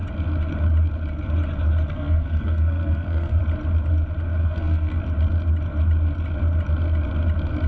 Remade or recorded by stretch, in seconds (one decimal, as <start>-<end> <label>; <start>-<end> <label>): 0.0-1.9 recorded; 1.9-3.4 remade; 3.4-4.4 recorded; 4.4-5.0 remade; 5.0-7.7 recorded